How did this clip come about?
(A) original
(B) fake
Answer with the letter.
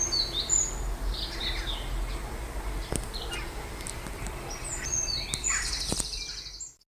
A